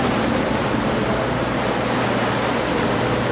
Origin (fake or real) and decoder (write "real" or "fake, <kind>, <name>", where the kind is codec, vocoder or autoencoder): real